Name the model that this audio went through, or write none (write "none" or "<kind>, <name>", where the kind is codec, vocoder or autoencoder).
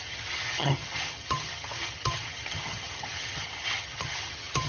vocoder, HiFi-GAN